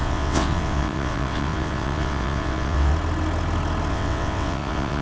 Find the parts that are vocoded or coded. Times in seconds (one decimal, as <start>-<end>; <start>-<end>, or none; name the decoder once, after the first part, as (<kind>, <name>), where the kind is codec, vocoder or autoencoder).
0.0-2.9 (vocoder, WaveNeXt); 3.9-5.0